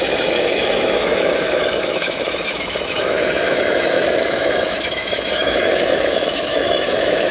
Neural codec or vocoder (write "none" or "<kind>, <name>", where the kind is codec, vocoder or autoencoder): autoencoder, DAC-VAE